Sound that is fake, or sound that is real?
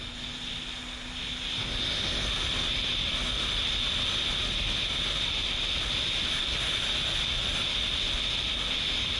real